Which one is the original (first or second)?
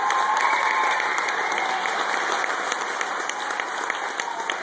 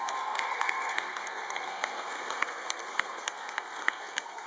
first